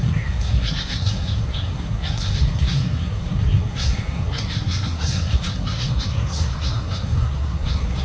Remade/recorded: remade